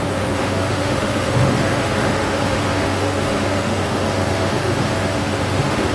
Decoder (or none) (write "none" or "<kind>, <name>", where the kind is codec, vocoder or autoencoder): autoencoder, DAC-VAE